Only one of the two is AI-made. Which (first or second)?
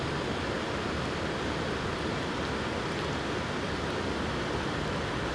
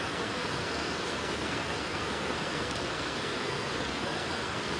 second